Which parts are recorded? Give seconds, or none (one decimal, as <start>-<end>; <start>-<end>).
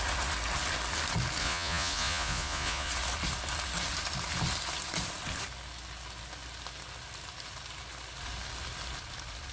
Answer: 0.0-1.4; 2.9-9.5